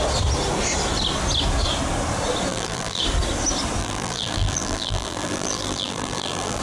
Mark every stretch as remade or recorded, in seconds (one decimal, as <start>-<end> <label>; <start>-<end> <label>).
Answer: 0.0-2.5 recorded; 2.5-3.0 remade; 3.0-3.8 recorded; 3.8-6.6 remade